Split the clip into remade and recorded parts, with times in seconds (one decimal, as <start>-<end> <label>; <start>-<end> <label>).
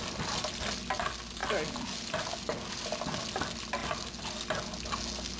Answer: 0.0-5.4 recorded